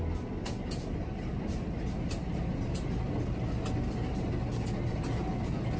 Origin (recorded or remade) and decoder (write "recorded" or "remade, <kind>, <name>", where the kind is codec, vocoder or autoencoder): recorded